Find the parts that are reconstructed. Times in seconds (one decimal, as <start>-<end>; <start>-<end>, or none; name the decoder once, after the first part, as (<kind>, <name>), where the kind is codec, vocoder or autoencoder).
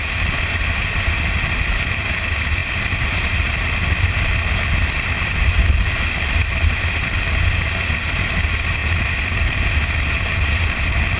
none